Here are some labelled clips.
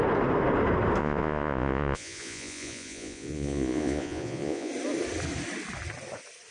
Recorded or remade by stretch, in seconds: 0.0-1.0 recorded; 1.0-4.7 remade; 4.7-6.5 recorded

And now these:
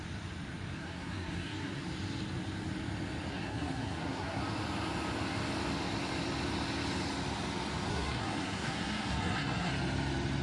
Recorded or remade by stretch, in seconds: 0.0-0.8 recorded; 0.8-1.8 remade; 1.8-3.3 recorded; 3.3-4.4 remade; 4.4-7.9 recorded; 7.9-9.7 remade; 9.7-10.4 recorded

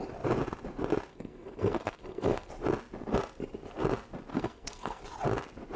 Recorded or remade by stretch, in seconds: 0.0-1.1 recorded; 1.1-2.5 remade; 2.5-4.3 recorded; 4.3-5.0 remade; 5.0-5.8 recorded

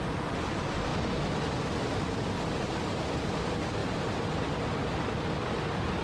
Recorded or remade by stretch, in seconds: 0.0-6.0 recorded

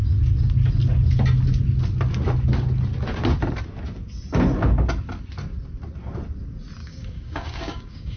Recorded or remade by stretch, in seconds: 0.0-6.8 recorded; 6.8-8.2 remade

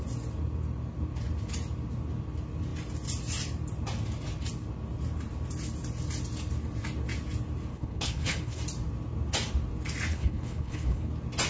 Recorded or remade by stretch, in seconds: 0.0-7.7 recorded; 7.7-8.6 remade; 8.6-10.1 recorded; 10.1-11.1 remade; 11.1-11.5 recorded

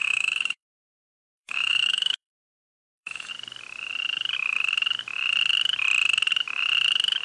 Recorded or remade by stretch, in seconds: 0.0-3.3 remade; 3.3-7.2 recorded